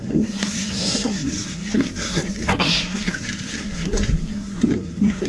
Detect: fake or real fake